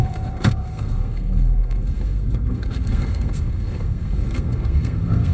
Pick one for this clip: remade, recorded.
remade